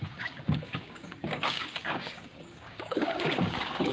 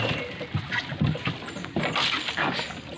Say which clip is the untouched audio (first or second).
second